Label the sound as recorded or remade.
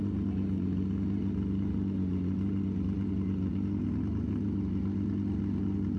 recorded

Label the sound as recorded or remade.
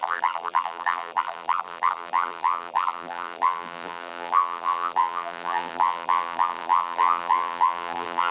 remade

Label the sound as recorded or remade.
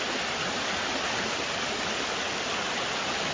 recorded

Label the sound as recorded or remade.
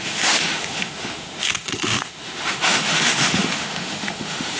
remade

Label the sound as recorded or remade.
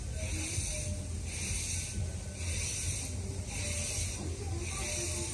recorded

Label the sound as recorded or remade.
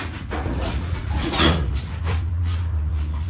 remade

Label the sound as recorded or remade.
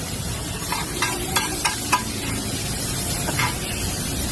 remade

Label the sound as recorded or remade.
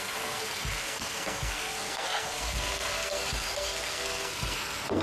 remade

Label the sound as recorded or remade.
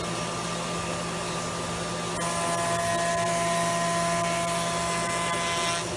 recorded